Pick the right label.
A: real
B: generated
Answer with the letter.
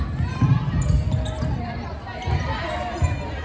A